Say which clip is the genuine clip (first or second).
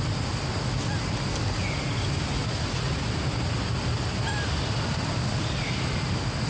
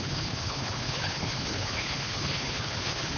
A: first